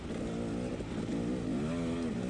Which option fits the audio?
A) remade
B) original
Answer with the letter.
B